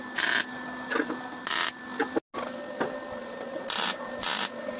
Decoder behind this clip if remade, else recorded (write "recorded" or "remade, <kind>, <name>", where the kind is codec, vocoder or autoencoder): recorded